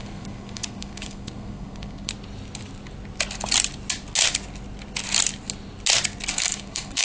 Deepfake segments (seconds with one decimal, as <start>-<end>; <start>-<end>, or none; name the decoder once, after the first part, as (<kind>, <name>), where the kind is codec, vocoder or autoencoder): 0.0-2.1 (codec, SNAC); 6.3-7.0